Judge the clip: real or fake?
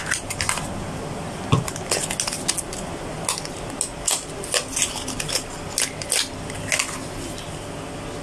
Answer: real